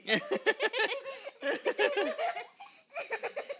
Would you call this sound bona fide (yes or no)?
yes